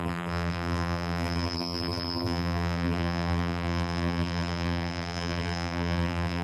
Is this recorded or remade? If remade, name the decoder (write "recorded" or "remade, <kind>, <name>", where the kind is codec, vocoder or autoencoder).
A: remade, vocoder, BigVGAN v2